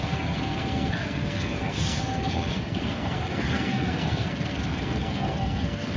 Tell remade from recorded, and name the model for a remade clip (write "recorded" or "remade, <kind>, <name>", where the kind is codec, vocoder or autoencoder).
remade, codec, SNAC